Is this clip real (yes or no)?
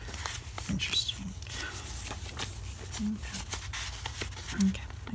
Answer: yes